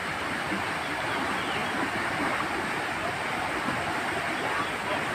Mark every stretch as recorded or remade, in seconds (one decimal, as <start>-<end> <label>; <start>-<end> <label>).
0.0-5.1 recorded

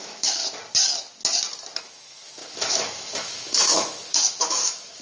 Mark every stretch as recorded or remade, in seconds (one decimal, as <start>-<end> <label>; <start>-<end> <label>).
0.0-0.4 remade; 0.4-1.8 recorded; 1.8-5.0 remade

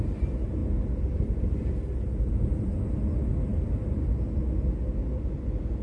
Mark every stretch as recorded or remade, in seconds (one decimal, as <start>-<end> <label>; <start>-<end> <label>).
0.0-5.8 recorded

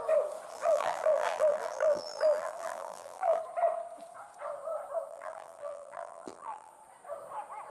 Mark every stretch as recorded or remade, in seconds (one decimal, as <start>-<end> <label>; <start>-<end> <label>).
0.0-0.5 recorded; 0.5-3.4 remade; 3.4-5.1 recorded; 5.1-6.7 remade; 6.7-7.7 recorded

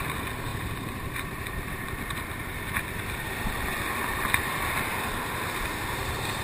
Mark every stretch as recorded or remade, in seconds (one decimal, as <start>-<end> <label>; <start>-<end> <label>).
0.0-0.5 recorded; 0.5-1.6 remade; 1.6-6.4 recorded

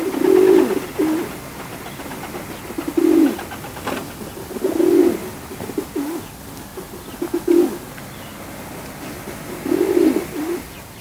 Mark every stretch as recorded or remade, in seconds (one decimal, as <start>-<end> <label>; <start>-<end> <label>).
0.0-11.0 recorded

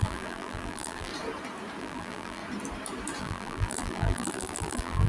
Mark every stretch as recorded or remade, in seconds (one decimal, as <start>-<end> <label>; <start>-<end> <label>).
0.0-1.1 remade; 1.1-1.8 recorded; 1.8-2.4 remade; 2.4-3.2 recorded; 3.2-5.1 remade